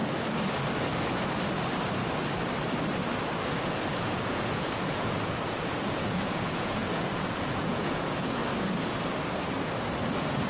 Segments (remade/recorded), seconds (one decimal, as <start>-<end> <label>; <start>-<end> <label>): 0.0-3.6 recorded; 3.6-8.4 remade; 8.4-10.1 recorded; 10.1-10.5 remade